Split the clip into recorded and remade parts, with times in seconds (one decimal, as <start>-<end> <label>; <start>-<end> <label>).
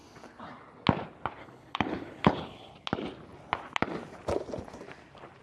0.0-1.4 recorded; 1.4-2.7 remade; 2.7-5.4 recorded